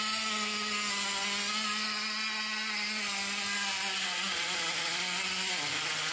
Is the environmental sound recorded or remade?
recorded